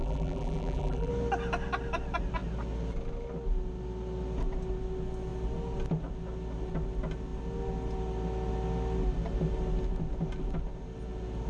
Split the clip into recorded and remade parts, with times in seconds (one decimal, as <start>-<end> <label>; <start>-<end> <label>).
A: 0.0-1.1 remade; 1.1-11.5 recorded